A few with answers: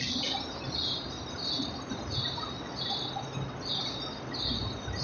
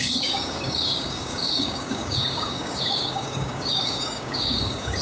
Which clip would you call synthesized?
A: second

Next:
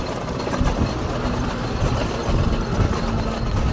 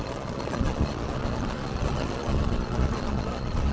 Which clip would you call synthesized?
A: second